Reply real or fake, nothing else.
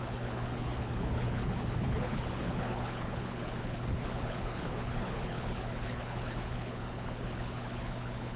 fake